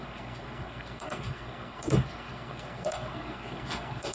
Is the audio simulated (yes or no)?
yes